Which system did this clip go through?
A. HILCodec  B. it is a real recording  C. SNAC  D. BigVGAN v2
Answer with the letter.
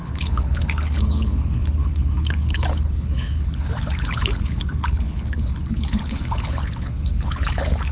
A